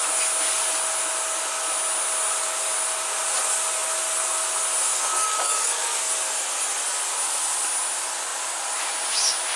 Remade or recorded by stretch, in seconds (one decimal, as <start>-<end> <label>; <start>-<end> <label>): 0.0-5.1 recorded; 5.1-6.0 remade; 6.0-9.6 recorded